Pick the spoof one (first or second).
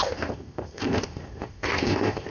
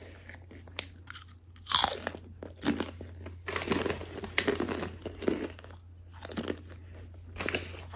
first